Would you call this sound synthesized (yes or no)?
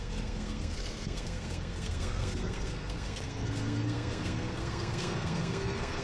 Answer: yes